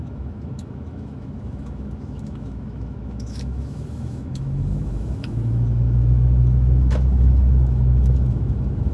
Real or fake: fake